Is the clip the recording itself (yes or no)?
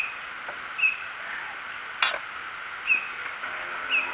yes